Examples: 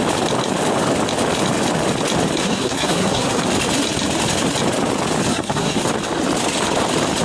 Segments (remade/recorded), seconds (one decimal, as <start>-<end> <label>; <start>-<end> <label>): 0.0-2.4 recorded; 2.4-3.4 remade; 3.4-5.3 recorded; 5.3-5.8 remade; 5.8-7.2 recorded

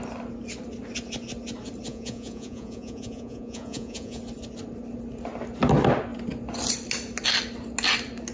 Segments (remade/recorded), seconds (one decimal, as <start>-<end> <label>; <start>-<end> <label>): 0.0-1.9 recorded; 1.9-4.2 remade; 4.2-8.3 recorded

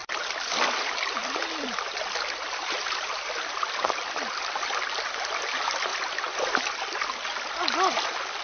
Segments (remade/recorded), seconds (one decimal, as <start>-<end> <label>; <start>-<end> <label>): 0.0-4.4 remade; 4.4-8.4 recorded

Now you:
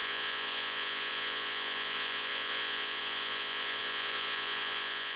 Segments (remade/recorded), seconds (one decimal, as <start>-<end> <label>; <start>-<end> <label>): 0.0-5.2 remade

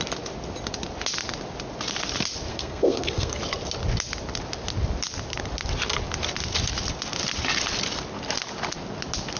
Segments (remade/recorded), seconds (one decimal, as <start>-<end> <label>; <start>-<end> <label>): 0.0-2.5 recorded; 2.5-3.4 remade; 3.4-9.4 recorded

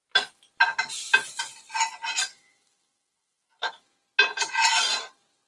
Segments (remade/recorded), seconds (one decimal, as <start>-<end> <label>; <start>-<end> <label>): 0.0-2.3 recorded; 2.3-3.7 remade; 3.7-5.5 recorded

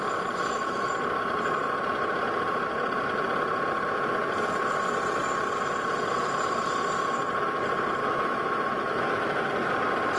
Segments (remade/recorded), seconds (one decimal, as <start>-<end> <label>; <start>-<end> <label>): 0.0-0.4 recorded; 0.4-0.9 remade; 0.9-8.0 recorded; 8.0-9.5 remade; 9.5-10.2 recorded

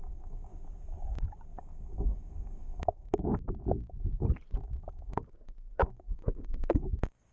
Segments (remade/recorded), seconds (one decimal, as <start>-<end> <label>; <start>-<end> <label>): 0.0-0.5 remade; 0.5-1.6 recorded; 1.6-3.3 remade; 3.3-5.0 recorded; 5.0-7.3 remade